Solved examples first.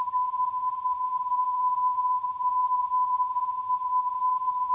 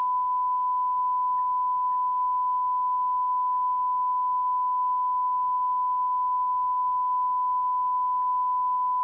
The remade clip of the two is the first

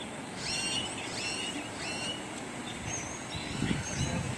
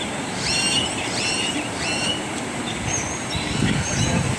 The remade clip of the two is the second